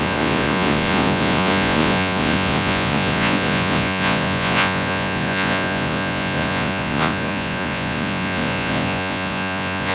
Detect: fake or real fake